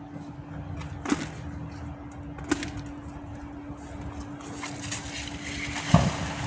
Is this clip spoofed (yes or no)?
no